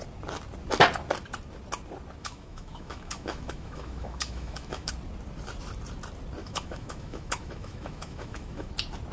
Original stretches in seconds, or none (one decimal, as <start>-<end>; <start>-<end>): 0.0-2.2; 4.9-6.4; 8.7-9.1